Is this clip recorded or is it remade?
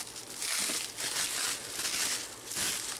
recorded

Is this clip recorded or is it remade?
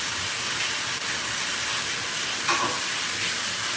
recorded